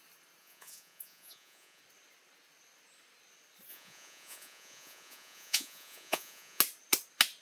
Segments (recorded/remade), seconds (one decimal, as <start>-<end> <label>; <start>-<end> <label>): 0.0-0.4 recorded; 0.4-1.8 remade; 1.8-3.7 recorded; 3.7-6.6 remade; 6.6-7.4 recorded